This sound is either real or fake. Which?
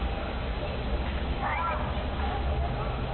real